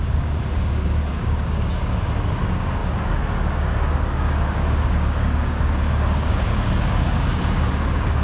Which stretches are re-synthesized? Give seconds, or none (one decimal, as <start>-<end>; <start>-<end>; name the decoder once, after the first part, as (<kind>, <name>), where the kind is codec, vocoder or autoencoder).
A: 0.0-8.2 (codec, DAC)